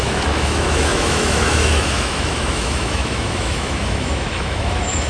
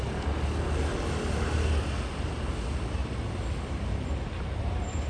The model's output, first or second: first